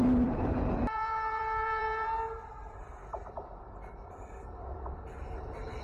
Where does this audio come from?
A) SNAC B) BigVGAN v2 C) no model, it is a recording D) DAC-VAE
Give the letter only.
B